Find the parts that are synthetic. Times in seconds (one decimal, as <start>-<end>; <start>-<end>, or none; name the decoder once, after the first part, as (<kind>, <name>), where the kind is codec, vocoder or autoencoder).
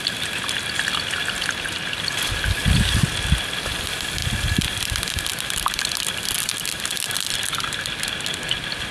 2.6-3.1 (vocoder, BigVGAN v2)